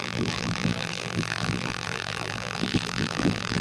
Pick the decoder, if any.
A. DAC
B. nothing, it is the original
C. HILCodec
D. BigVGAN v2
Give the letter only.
D